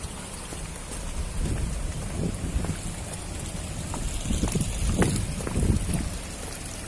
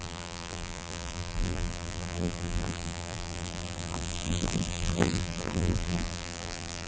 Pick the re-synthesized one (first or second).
second